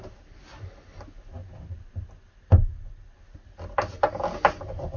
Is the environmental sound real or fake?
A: real